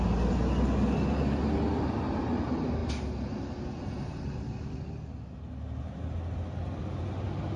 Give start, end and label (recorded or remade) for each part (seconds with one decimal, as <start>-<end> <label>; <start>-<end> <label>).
0.0-7.6 recorded